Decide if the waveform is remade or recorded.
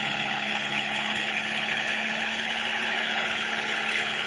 remade